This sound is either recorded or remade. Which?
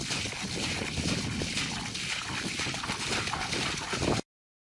recorded